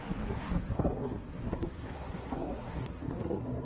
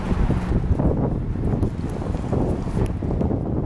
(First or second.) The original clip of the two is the second